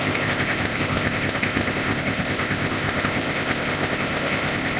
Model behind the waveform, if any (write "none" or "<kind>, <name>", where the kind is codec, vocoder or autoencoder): codec, ZipCodec